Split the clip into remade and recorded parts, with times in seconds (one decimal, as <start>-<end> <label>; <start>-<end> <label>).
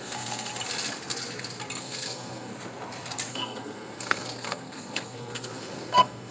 0.0-0.5 remade; 0.5-1.8 recorded; 1.8-2.5 remade; 2.5-3.3 recorded; 3.3-6.3 remade